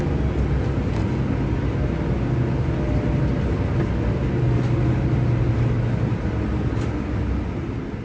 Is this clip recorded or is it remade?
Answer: recorded